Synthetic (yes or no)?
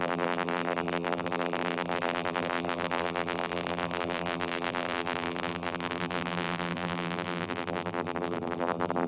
yes